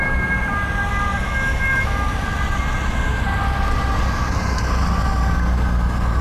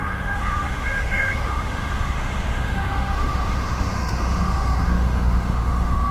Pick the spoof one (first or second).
second